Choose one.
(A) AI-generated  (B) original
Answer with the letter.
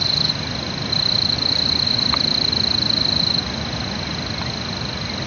B